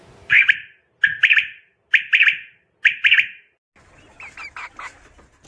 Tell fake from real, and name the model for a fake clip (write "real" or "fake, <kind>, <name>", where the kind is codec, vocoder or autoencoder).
real